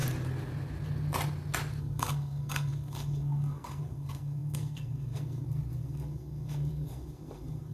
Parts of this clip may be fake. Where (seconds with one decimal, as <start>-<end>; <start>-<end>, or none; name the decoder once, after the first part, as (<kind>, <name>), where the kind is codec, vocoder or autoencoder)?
1.8-7.7 (codec, SNAC)